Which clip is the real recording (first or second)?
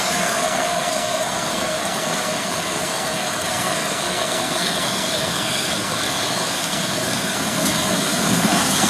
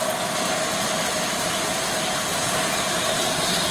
second